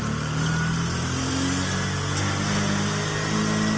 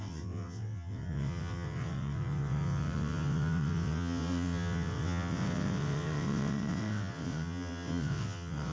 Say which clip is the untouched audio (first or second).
first